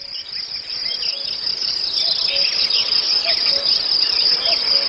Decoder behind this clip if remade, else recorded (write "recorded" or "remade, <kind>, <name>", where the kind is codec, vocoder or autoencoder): recorded